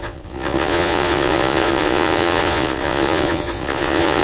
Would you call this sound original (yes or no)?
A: no